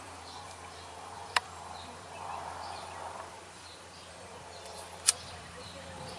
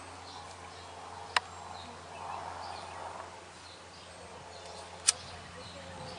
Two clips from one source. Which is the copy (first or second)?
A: first